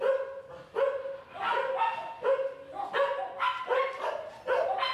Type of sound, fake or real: real